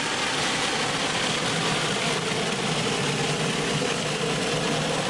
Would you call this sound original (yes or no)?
yes